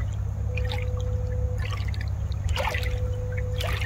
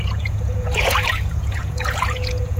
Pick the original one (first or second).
first